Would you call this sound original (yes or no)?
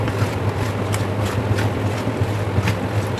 yes